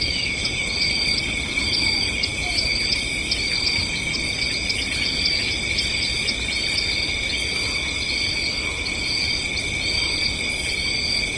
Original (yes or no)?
yes